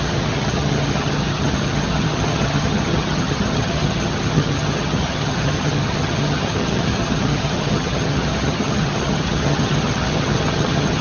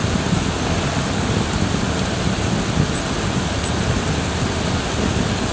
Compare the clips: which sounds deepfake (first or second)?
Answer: first